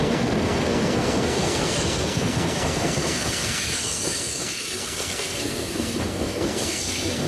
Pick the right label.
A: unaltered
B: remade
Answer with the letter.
B